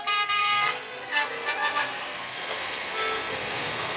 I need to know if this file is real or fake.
fake